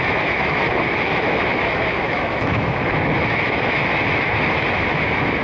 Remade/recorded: remade